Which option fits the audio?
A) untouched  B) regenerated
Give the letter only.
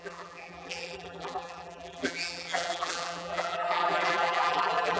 B